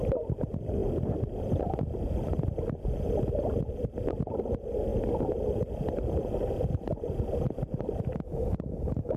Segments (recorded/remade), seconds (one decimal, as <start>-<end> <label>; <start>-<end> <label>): 0.0-9.2 recorded

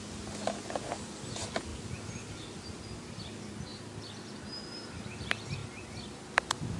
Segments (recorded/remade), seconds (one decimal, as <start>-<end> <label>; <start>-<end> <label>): 0.0-6.8 recorded

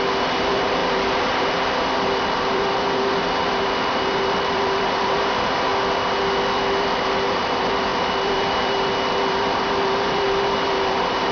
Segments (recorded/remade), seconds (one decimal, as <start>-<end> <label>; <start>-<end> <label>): 0.0-5.7 remade; 5.7-6.8 recorded; 6.8-11.3 remade